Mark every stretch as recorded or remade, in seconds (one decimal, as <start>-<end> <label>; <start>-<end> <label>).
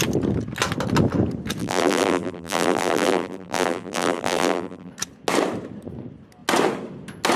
0.0-1.6 recorded; 1.6-4.9 remade; 4.9-7.4 recorded